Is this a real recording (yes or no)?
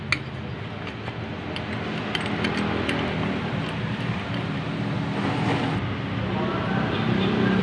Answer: yes